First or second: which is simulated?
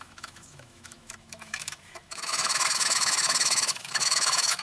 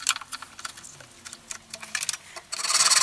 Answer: first